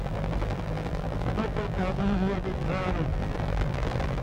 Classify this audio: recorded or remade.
remade